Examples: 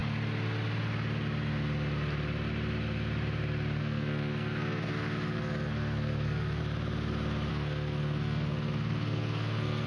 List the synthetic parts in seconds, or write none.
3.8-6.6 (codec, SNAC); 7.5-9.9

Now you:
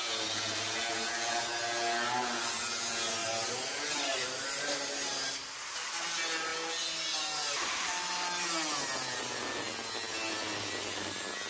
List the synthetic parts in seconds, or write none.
3.2-5.3 (vocoder, BigVGAN v2)

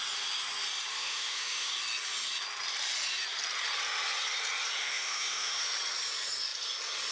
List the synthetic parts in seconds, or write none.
0.9-1.7 (autoencoder, DAC-VAE); 4.8-5.6

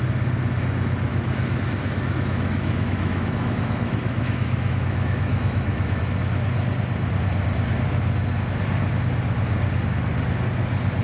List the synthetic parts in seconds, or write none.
1.1-6.0 (autoencoder, DAC-VAE)

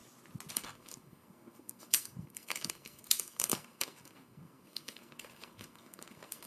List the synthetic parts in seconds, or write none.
0.5-6.5 (codec, SNAC)